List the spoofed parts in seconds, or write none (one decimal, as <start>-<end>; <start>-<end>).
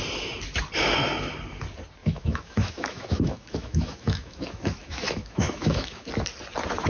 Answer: 2.0-6.1